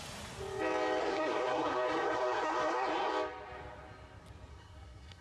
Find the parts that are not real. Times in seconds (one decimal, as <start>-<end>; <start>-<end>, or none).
1.0-3.1; 4.5-5.2